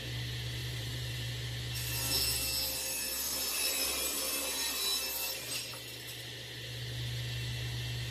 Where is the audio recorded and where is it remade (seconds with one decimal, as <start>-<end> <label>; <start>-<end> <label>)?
0.0-0.6 recorded; 0.6-1.3 remade; 1.3-8.1 recorded